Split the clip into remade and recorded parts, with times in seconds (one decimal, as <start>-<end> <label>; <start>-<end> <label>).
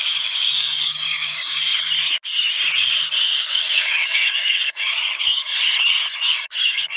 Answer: 0.0-1.7 remade; 1.7-3.2 recorded; 3.2-5.5 remade; 5.5-6.3 recorded; 6.3-7.0 remade